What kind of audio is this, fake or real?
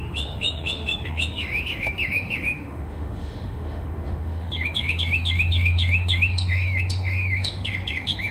fake